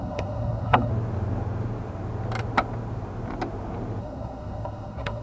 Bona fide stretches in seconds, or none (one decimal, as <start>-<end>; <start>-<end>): 0.9-4.0